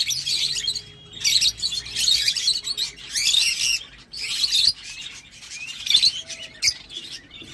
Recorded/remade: recorded